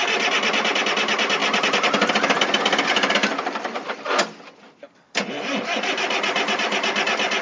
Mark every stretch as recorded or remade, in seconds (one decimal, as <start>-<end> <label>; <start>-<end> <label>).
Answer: 0.0-1.4 recorded; 1.4-2.1 remade; 2.1-3.2 recorded; 3.2-5.5 remade; 5.5-7.4 recorded